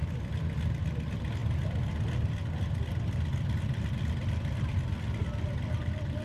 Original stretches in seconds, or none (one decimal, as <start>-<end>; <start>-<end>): 0.0-6.2